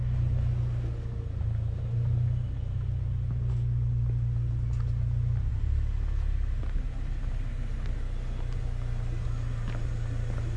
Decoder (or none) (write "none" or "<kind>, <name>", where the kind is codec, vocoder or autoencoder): none